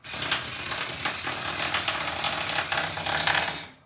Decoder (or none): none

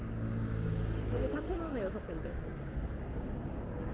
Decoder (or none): codec, DAC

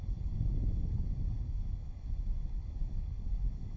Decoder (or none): codec, DAC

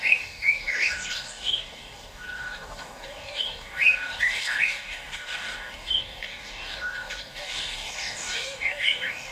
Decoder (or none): codec, DAC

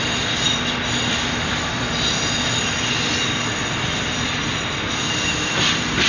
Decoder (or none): none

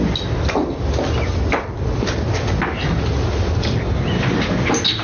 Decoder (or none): none